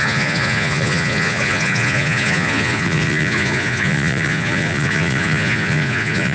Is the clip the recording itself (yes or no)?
no